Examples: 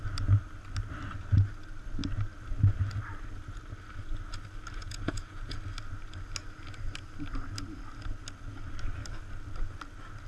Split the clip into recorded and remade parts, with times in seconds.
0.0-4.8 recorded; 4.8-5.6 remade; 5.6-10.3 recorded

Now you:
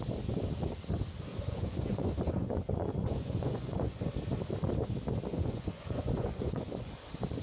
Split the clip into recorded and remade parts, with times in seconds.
0.0-1.3 recorded; 1.3-4.1 remade; 4.1-5.3 recorded; 5.3-6.9 remade; 6.9-7.4 recorded

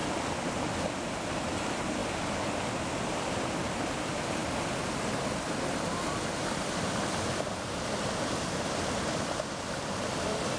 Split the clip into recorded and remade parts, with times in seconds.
0.0-10.6 recorded

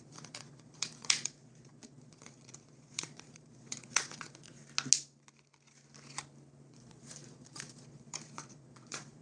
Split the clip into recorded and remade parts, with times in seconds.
0.0-4.6 remade; 4.6-6.7 recorded; 6.7-9.2 remade